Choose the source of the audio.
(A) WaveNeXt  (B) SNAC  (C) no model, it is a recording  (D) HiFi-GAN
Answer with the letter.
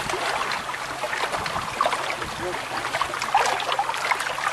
C